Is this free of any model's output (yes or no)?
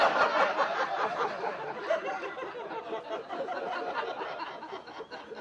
yes